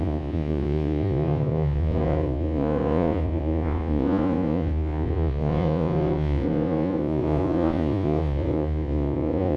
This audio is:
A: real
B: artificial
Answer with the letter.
B